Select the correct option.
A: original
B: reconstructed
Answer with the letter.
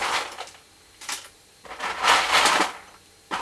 A